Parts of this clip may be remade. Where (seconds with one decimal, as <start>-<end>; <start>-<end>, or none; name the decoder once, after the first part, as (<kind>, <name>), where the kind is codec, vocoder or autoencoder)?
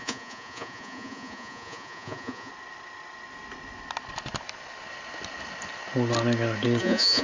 0.0-2.5 (vocoder, Vocos); 6.8-7.2